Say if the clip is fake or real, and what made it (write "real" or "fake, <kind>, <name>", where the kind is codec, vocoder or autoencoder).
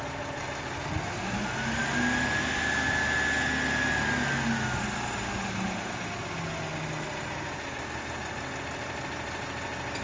real